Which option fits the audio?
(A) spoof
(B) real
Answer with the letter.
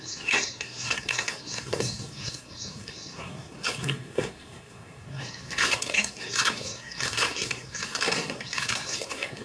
A